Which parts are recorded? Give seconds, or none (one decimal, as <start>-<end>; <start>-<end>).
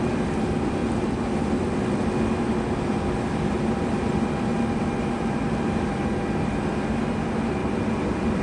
0.0-0.8; 1.3-7.6